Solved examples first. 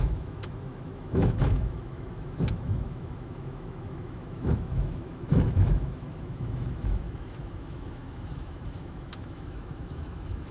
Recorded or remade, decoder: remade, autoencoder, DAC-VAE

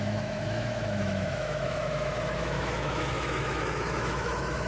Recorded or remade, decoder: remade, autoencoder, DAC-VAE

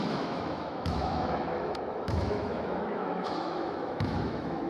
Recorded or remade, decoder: remade, autoencoder, DAC-VAE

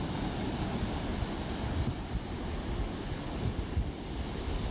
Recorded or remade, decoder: recorded